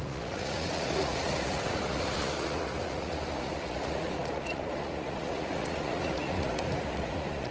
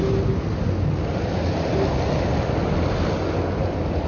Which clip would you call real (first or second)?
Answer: second